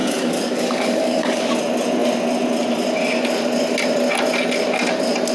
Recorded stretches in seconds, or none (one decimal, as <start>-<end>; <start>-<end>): 1.6-5.3